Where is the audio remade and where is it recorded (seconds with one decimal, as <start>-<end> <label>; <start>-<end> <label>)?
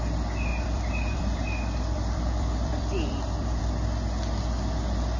0.0-0.5 recorded; 0.5-3.6 remade; 3.6-5.2 recorded